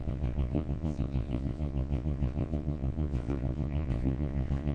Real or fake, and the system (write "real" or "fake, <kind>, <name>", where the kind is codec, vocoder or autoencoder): fake, vocoder, Vocos